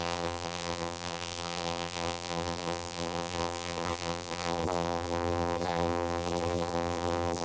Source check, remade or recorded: remade